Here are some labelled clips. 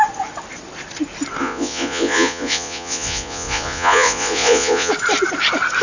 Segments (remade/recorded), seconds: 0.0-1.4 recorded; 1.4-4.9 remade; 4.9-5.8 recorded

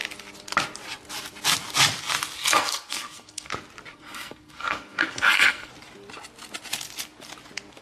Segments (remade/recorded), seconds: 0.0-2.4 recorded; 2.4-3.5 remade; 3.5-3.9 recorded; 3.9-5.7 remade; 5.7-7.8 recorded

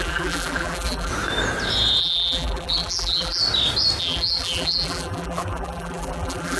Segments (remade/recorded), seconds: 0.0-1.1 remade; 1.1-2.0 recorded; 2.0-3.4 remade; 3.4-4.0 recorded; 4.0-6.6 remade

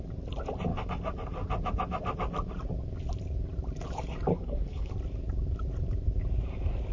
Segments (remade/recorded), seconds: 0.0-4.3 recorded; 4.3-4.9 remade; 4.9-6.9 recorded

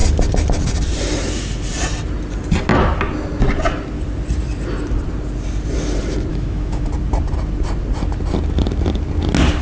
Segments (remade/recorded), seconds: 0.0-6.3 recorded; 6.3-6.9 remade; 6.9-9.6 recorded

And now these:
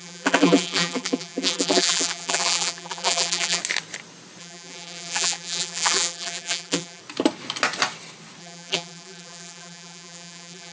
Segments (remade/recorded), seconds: 0.0-3.6 remade; 3.6-4.4 recorded; 4.4-7.0 remade; 7.0-8.4 recorded; 8.4-10.7 remade